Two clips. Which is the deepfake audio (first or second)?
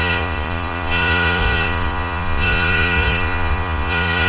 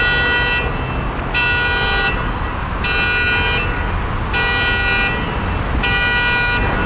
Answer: first